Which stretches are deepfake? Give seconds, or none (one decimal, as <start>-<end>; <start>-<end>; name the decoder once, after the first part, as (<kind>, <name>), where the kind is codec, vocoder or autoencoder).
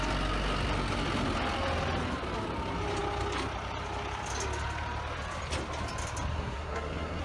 6.3-7.2 (codec, SNAC)